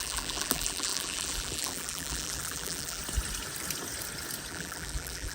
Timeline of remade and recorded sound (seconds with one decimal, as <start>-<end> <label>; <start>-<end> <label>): 0.0-3.0 remade; 3.0-4.5 recorded; 4.5-5.3 remade